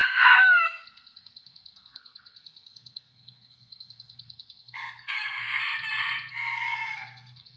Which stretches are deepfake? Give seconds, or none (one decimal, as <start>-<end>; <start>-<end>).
0.0-5.6; 6.3-7.6

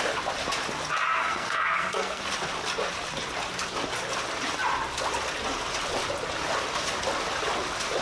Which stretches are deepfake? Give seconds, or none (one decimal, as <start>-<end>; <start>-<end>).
1.2-2.2

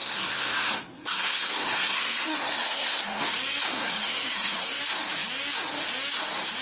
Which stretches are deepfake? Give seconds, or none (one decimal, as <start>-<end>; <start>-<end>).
0.0-3.2; 3.7-4.8

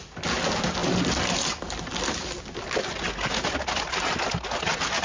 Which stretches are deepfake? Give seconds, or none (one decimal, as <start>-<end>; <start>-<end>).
none